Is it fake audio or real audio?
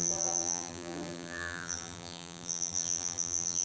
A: fake